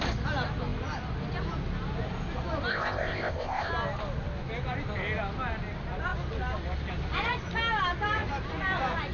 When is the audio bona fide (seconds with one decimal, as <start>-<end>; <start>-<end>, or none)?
0.0-2.7; 3.7-9.1